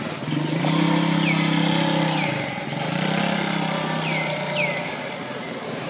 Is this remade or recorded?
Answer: recorded